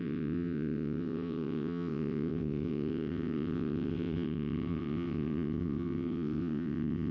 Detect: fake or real fake